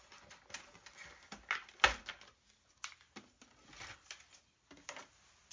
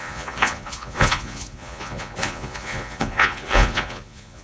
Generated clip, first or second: second